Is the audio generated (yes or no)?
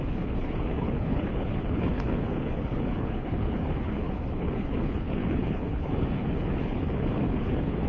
yes